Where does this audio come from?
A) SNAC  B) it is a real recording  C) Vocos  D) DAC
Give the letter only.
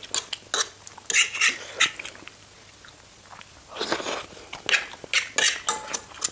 B